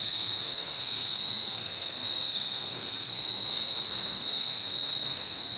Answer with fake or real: fake